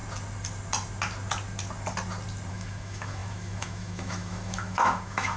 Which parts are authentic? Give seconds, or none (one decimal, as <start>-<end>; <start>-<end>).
0.0-2.5